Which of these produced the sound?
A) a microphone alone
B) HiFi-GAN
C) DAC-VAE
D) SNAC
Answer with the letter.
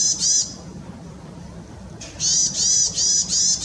A